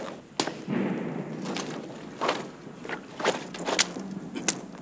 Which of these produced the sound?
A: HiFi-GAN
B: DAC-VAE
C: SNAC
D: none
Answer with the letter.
D